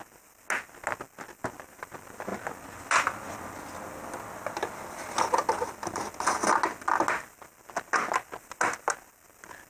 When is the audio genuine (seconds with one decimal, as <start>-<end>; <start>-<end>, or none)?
0.0-9.7